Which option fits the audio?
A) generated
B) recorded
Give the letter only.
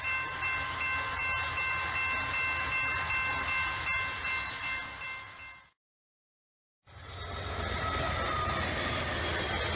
B